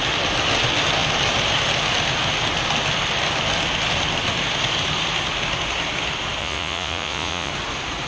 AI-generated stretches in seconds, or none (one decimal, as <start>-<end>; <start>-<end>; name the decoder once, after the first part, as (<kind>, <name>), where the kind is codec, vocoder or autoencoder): 6.4-7.5 (vocoder, Vocos)

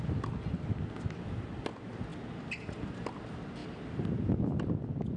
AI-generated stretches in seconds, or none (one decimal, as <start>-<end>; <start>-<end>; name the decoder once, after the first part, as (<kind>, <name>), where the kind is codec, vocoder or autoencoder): none

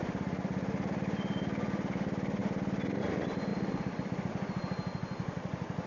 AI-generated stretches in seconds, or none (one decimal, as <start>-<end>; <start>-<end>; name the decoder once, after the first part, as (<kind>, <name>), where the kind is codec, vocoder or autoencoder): 3.5-4.3 (vocoder, BigVGAN v2)

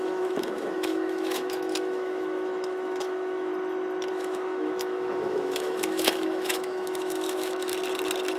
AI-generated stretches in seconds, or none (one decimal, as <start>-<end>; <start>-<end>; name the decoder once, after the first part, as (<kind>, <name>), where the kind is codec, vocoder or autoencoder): 0.0-3.5 (autoencoder, DAC-VAE); 4.1-7.7

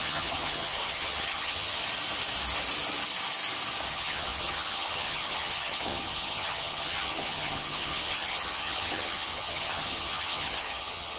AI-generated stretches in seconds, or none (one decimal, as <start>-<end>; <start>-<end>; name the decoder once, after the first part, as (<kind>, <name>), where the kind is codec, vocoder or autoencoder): 0.0-1.8 (vocoder, HiFi-GAN); 3.9-11.2

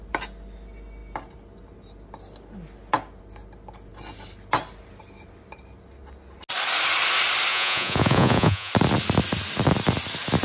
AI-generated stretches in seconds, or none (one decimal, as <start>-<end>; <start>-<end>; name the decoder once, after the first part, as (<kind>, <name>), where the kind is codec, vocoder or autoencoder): 7.5-8.7 (vocoder, Vocos)

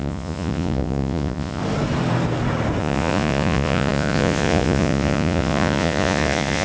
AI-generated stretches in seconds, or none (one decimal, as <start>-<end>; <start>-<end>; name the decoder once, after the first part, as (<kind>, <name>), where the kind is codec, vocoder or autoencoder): 0.0-1.6 (vocoder, Vocos); 2.8-6.6

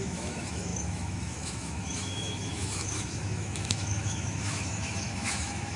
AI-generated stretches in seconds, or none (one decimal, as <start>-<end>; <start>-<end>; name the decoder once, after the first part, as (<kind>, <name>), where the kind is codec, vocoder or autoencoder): 0.0-5.8 (autoencoder, DAC-VAE)